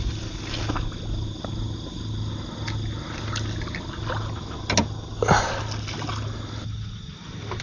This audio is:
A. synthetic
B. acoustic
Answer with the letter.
B